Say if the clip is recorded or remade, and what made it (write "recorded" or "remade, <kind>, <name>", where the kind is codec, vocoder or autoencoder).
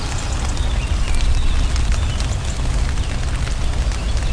recorded